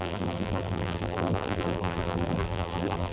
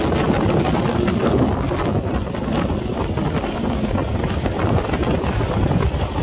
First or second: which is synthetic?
first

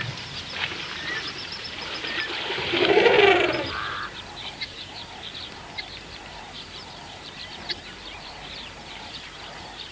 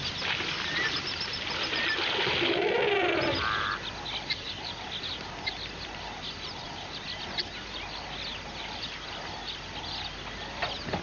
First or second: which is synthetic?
first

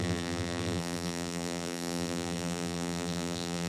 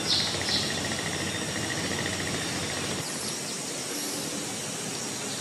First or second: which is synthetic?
first